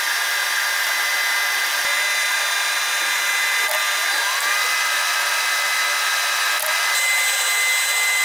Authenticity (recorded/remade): recorded